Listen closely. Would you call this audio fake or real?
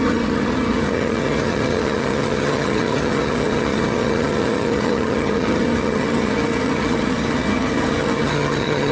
fake